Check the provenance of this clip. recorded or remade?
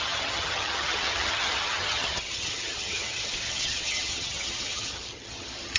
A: remade